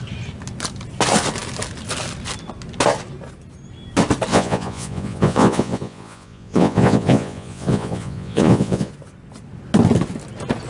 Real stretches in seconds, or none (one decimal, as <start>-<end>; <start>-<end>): 0.0-4.3; 8.9-10.7